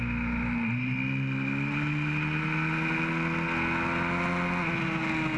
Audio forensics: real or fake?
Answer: real